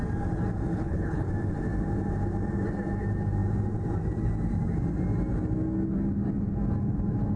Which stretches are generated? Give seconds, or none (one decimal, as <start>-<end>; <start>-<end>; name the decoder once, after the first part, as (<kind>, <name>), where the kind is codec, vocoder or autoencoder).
0.7-1.3 (codec, HILCodec)

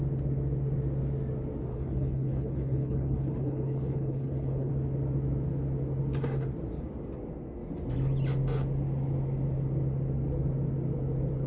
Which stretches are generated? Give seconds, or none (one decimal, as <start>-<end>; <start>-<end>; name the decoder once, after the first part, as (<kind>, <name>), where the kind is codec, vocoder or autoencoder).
1.7-4.7 (codec, HILCodec)